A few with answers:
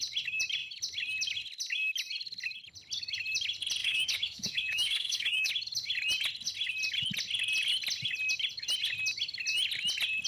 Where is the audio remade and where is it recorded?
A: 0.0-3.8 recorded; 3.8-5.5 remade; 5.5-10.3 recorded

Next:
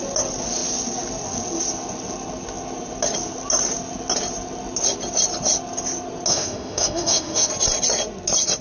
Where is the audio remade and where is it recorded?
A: 0.0-6.3 recorded; 6.3-7.5 remade; 7.5-8.6 recorded

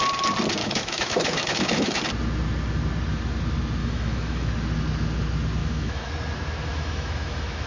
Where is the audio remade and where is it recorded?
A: 0.0-0.6 recorded; 0.6-2.0 remade; 2.0-3.8 recorded; 3.8-4.5 remade; 4.5-5.6 recorded; 5.6-6.1 remade; 6.1-6.7 recorded; 6.7-7.7 remade

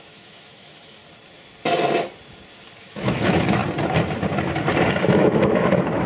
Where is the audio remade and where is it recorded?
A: 0.0-1.0 remade; 1.0-2.8 recorded; 2.8-3.6 remade; 3.6-5.0 recorded; 5.0-6.1 remade